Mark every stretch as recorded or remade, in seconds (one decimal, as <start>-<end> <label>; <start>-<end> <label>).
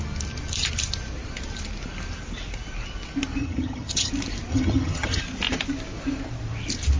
0.0-3.4 recorded; 3.4-4.1 remade; 4.1-4.5 recorded; 4.5-5.2 remade; 5.2-7.0 recorded